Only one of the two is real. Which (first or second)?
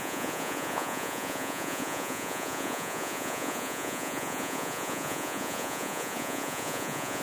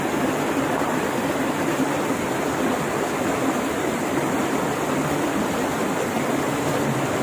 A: second